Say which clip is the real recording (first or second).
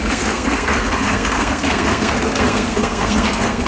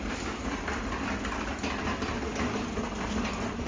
second